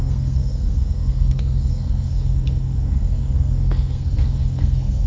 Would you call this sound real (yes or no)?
no